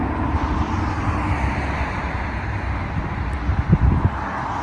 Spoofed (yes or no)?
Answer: no